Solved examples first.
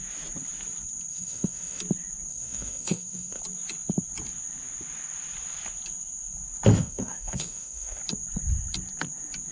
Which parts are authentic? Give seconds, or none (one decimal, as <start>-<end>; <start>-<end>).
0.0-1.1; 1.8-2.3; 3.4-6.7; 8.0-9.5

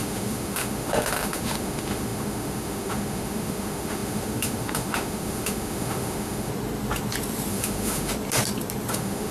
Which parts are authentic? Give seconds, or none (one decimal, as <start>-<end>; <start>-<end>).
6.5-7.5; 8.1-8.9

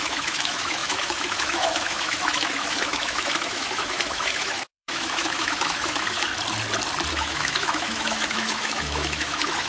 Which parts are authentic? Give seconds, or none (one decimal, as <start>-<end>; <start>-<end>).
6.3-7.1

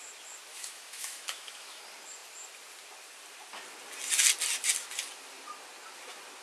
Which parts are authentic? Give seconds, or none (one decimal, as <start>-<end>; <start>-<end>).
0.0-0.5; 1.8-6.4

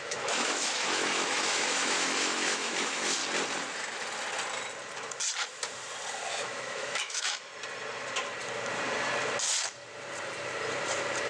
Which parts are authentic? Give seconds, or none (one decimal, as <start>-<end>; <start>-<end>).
3.2-6.3; 7.5-11.3

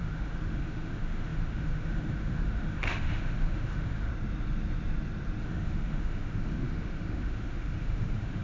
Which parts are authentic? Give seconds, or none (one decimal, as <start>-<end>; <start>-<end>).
4.1-5.4

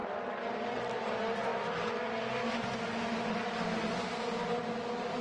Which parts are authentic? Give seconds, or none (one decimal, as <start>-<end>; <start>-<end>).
0.0-5.2